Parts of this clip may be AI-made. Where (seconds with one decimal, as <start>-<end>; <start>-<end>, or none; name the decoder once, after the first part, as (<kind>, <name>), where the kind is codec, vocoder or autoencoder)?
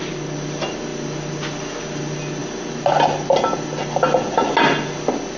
none